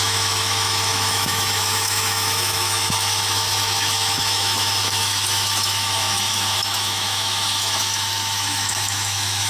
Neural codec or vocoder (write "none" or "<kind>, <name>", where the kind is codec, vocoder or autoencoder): autoencoder, DAC-VAE